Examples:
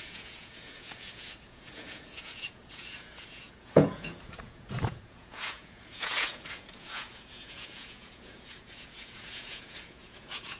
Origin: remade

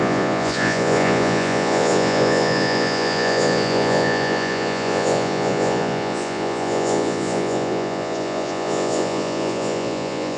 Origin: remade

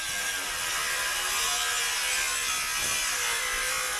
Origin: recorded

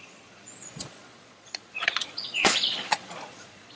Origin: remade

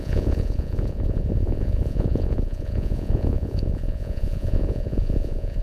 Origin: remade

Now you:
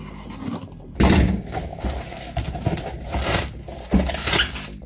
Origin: recorded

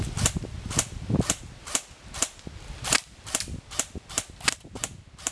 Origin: recorded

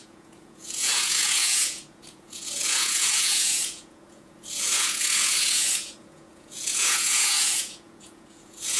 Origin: remade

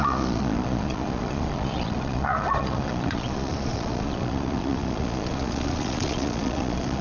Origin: remade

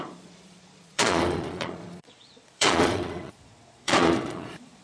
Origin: remade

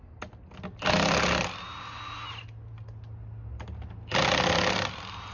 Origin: recorded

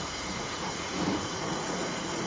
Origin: remade